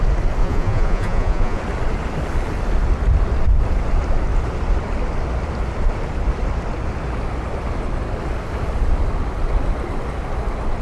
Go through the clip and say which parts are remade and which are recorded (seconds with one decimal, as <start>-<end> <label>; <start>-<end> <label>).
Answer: 0.0-0.4 recorded; 0.4-1.6 remade; 1.6-10.8 recorded